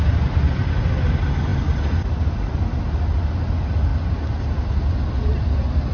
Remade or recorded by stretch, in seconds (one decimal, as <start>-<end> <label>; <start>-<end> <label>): 0.0-5.9 recorded